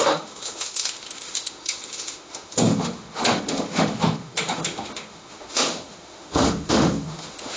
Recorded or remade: remade